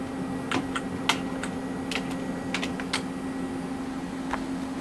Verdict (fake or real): real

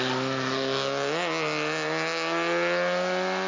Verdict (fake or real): real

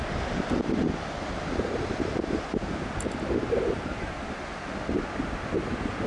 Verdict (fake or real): real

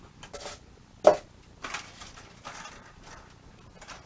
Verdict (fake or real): real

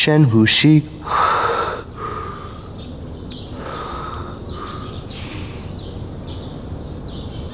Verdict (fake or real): real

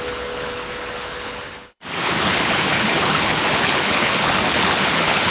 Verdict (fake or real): fake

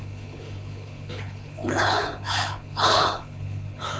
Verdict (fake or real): fake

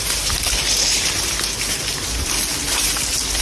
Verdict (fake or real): real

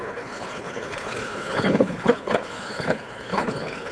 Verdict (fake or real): fake